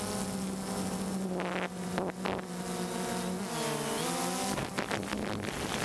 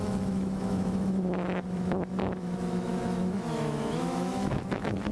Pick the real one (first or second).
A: first